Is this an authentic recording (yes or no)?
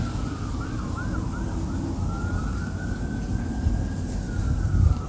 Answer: yes